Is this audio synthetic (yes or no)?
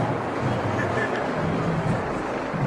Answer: no